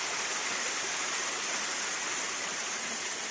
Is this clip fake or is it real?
real